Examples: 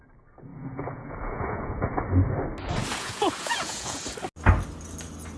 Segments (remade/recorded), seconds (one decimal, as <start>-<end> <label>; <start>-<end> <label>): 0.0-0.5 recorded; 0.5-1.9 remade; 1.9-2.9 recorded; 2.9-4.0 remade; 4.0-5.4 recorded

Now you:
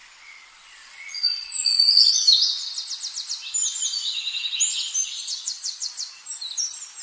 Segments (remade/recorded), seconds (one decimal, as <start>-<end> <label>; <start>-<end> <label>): 0.0-2.1 remade; 2.1-5.0 recorded; 5.0-5.9 remade; 5.9-7.0 recorded

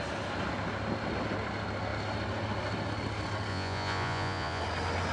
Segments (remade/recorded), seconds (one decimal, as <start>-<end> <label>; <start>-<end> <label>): 0.0-3.5 recorded; 3.5-4.6 remade; 4.6-5.1 recorded

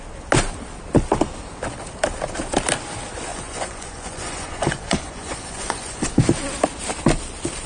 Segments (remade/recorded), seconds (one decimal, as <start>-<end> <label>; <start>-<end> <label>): 0.0-3.3 recorded; 3.3-6.1 remade; 6.1-7.7 recorded

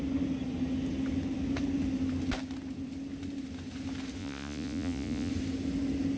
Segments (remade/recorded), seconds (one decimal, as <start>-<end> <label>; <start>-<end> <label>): 0.0-4.2 recorded; 4.2-5.3 remade; 5.3-6.2 recorded

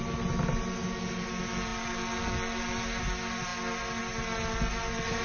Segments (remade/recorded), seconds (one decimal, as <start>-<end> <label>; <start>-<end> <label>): 0.0-5.2 recorded